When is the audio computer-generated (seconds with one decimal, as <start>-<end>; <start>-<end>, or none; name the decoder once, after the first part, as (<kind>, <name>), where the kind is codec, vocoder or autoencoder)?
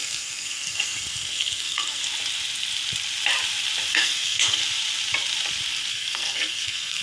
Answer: 0.0-2.0 (codec, SNAC); 3.9-4.6; 5.9-7.0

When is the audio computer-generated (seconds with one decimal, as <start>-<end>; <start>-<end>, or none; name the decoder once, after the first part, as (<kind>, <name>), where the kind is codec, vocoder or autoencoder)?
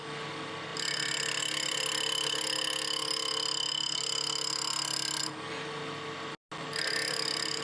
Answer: none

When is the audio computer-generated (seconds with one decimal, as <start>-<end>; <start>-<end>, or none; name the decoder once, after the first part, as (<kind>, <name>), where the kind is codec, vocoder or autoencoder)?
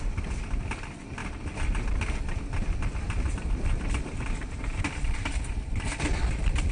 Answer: 0.0-1.2 (vocoder, BigVGAN v2); 2.5-6.7